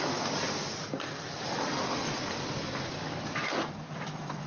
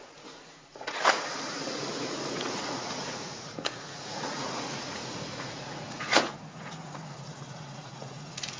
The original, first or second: first